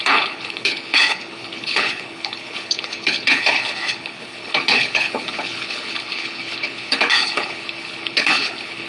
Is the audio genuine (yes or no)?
no